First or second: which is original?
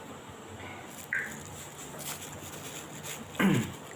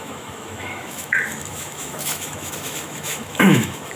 first